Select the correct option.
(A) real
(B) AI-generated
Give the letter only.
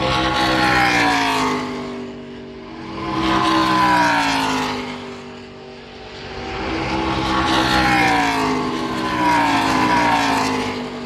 A